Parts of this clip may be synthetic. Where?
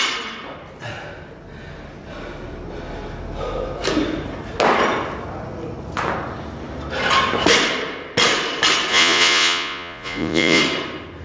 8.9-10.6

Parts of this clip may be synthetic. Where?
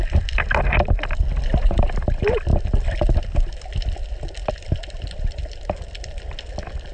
none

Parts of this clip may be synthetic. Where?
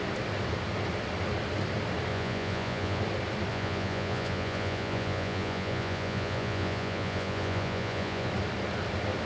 2.1-3.0; 3.5-8.3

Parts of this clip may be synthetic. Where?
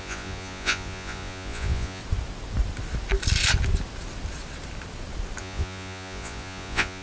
0.0-2.0; 5.4-7.0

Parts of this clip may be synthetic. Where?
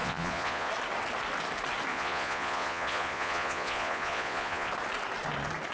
0.0-0.7; 1.9-4.7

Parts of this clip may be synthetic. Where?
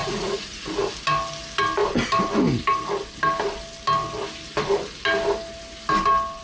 0.0-0.8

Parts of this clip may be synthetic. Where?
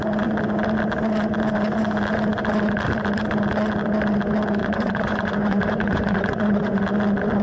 4.6-6.8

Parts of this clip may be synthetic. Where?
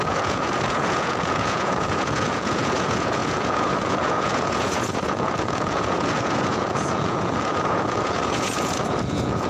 0.0-9.5